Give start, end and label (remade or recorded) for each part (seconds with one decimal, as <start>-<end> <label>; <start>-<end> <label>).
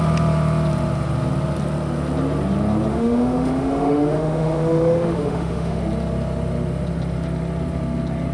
0.0-2.9 recorded; 2.9-5.8 remade; 5.8-8.3 recorded